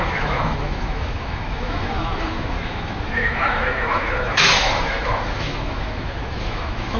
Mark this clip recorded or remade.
remade